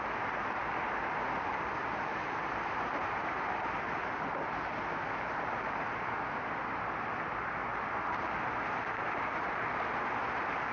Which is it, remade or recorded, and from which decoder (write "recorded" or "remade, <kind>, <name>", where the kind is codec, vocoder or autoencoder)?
recorded